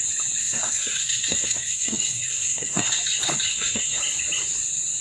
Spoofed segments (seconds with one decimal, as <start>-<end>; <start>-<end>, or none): 0.4-3.0; 3.5-4.0